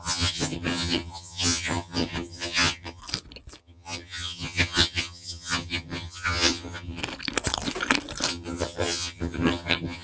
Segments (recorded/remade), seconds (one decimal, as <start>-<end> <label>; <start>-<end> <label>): 0.0-3.0 remade; 3.0-3.6 recorded; 3.6-7.0 remade; 7.0-8.3 recorded; 8.3-10.0 remade